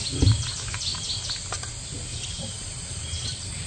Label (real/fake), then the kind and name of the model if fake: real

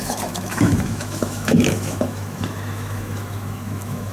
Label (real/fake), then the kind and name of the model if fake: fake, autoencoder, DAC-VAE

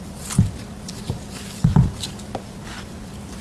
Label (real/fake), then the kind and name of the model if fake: real